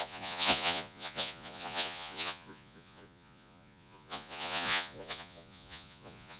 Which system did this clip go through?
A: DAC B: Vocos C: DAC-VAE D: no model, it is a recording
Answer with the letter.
B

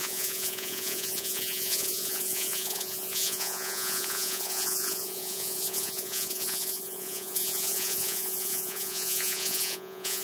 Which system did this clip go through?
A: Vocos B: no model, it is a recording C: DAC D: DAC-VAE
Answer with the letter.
A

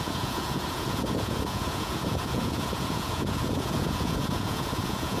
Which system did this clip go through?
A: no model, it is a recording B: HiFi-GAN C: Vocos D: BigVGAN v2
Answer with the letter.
C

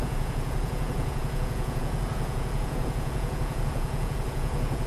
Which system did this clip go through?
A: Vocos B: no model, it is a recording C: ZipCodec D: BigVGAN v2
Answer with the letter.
A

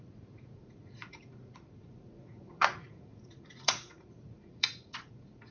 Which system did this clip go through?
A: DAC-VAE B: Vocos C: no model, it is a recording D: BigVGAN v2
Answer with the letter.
B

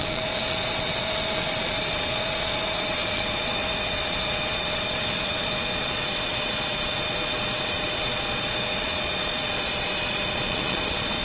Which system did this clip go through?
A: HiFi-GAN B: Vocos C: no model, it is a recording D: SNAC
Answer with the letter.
B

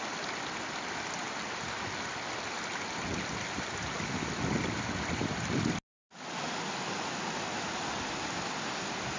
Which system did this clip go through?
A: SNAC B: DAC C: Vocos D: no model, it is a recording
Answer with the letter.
D